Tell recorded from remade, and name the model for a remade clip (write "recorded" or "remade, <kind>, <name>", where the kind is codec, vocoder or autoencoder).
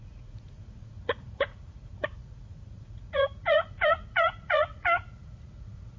remade, vocoder, Vocos